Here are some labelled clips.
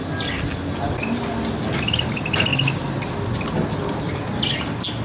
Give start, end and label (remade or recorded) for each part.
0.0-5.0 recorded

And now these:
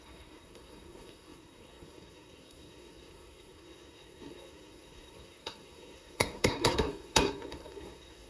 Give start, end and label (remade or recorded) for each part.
0.0-8.3 remade